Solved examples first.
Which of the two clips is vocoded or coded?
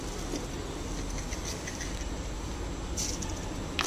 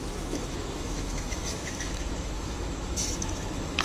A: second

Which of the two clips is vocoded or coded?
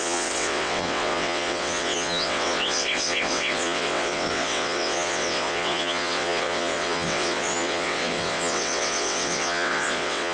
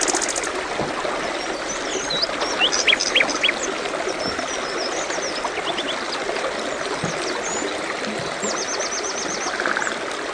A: first